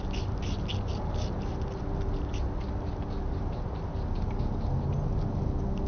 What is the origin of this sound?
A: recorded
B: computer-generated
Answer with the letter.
A